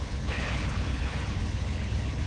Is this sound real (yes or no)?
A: no